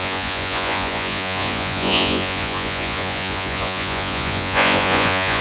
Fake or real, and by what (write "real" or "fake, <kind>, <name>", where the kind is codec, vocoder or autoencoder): fake, vocoder, Vocos